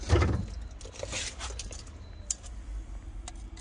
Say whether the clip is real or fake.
real